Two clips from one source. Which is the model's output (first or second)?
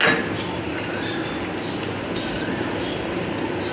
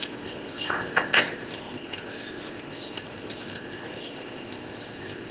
second